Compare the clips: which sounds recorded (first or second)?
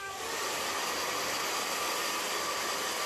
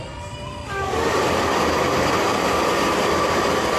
first